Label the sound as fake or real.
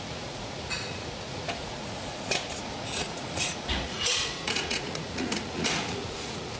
fake